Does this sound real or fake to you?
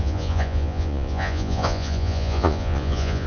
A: fake